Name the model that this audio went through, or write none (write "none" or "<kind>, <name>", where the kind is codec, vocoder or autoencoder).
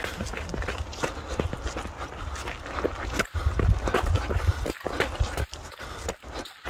none